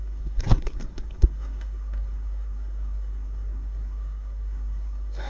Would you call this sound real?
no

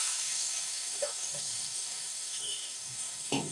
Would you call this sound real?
no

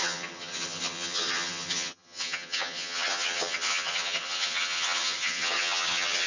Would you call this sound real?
no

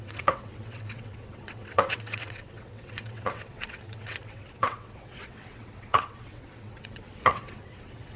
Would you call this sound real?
no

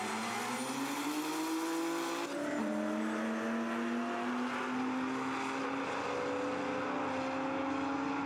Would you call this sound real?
yes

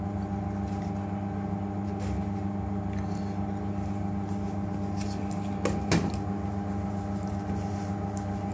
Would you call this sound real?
yes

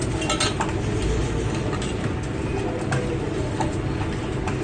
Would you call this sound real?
yes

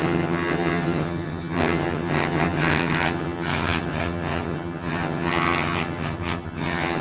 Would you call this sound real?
no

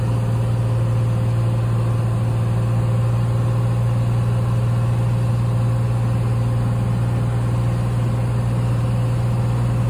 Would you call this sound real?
yes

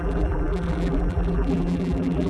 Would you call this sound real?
no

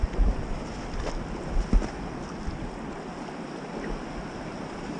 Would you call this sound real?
yes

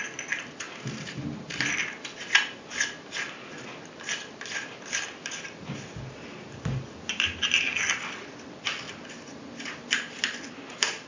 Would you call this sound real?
yes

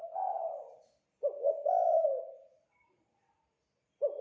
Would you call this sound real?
yes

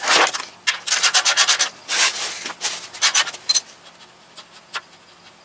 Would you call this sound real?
yes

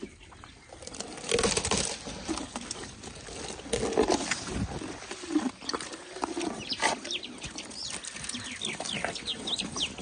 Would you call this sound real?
yes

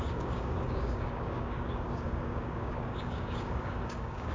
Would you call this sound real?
no